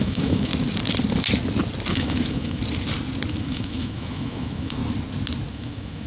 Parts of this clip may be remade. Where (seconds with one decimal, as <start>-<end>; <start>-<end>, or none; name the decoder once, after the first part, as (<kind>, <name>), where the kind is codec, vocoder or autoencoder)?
0.0-0.5 (autoencoder, DAC-VAE); 1.9-2.6; 3.3-4.8; 5.5-6.1